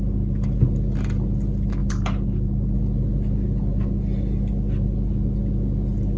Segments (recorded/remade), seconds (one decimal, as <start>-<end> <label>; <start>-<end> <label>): 0.0-6.2 recorded